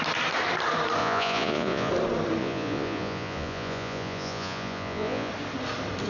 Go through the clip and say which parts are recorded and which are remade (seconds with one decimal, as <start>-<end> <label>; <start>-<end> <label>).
0.0-1.0 recorded; 1.0-1.9 remade; 1.9-2.4 recorded; 2.4-5.3 remade; 5.3-6.1 recorded